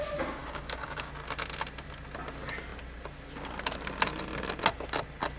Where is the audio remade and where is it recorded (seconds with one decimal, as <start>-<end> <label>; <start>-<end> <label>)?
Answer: 0.0-0.4 recorded; 0.4-1.1 remade; 1.1-5.4 recorded